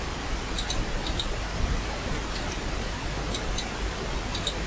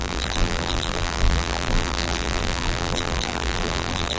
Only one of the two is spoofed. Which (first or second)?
second